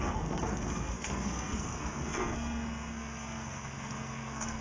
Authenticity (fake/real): fake